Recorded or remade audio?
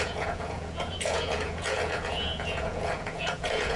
remade